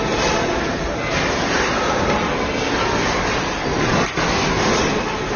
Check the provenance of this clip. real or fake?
real